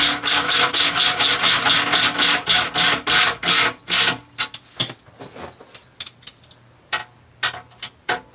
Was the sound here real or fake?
real